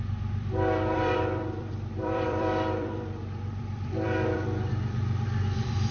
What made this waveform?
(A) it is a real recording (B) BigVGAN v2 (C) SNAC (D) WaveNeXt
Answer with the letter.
B